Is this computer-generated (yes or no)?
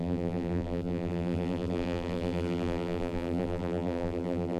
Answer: yes